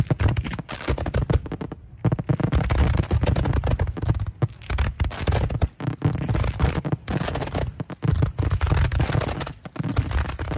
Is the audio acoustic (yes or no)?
yes